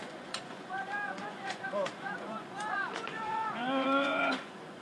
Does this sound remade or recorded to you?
remade